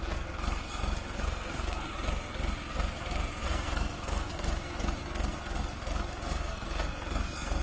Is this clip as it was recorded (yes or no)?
no